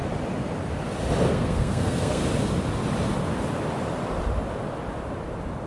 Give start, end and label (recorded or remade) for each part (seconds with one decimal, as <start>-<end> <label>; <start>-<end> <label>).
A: 0.0-1.3 recorded; 1.3-2.2 remade; 2.2-5.7 recorded